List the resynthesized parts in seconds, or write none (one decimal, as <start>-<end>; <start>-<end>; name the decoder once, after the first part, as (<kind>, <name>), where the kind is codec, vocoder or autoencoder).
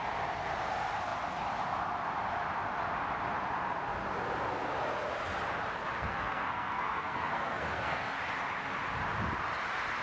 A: 5.9-8.2 (codec, SNAC)